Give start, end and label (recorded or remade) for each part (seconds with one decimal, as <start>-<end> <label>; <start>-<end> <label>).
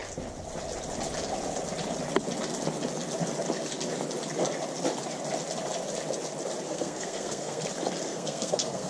0.0-6.7 recorded; 6.7-7.6 remade; 7.6-8.1 recorded; 8.1-8.9 remade